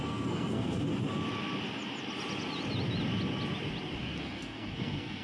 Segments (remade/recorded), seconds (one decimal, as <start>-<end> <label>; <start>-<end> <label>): 0.0-0.9 remade; 0.9-4.0 recorded; 4.0-5.2 remade